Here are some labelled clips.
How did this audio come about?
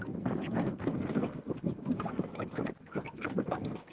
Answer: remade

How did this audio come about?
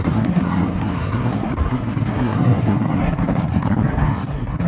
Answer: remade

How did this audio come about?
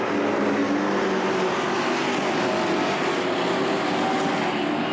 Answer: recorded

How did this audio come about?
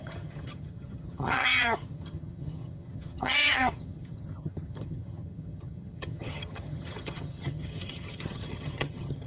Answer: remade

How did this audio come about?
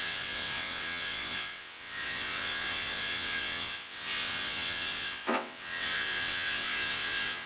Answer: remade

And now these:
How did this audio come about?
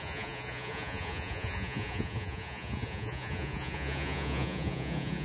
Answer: remade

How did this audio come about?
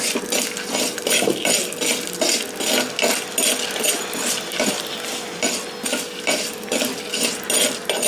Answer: recorded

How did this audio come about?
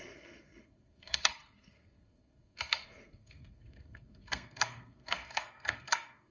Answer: remade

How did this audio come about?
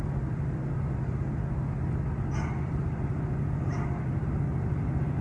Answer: recorded